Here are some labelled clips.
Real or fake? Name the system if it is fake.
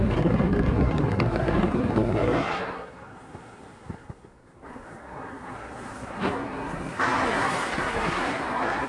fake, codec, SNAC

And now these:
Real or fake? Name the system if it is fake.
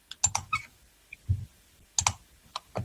real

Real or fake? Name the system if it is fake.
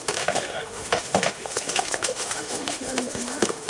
fake, autoencoder, DAC-VAE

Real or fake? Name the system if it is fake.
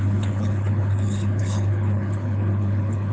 fake, codec, HILCodec